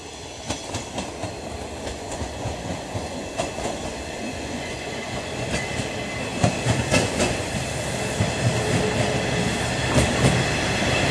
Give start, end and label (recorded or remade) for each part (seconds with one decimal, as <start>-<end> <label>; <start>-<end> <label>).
0.0-1.6 recorded; 1.6-5.8 remade; 5.8-6.3 recorded; 6.3-7.5 remade; 7.5-11.1 recorded